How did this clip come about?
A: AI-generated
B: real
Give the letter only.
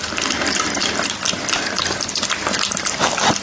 B